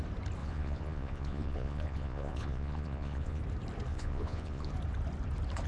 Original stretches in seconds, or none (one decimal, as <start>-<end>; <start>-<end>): 0.0-0.4; 3.4-3.9; 4.7-5.7